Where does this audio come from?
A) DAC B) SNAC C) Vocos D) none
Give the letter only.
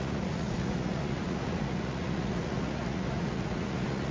C